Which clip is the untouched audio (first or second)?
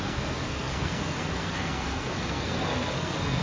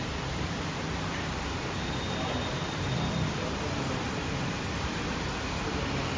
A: second